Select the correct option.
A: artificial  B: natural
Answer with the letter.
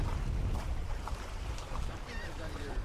A